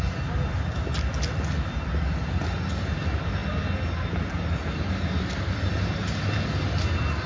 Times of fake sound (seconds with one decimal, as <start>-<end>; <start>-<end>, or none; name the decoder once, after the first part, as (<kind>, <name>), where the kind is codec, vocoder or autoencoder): none